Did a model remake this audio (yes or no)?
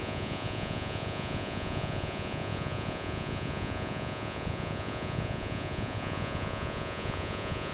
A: yes